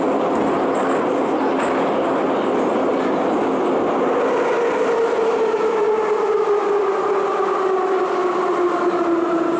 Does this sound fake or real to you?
real